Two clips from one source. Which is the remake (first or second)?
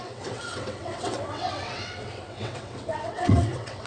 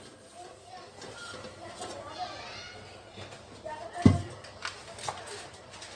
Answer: first